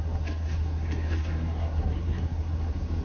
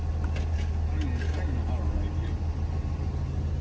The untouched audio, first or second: second